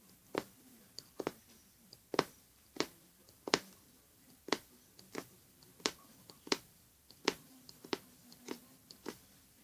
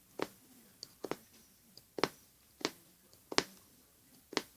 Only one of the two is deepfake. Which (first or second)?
first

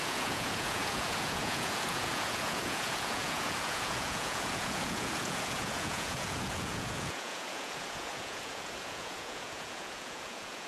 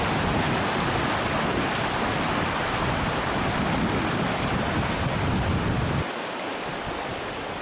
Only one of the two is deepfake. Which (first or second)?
first